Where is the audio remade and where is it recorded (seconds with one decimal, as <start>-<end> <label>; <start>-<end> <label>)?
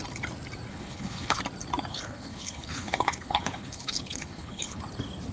0.0-0.7 recorded; 0.7-1.4 remade; 1.4-1.9 recorded; 1.9-4.8 remade; 4.8-5.3 recorded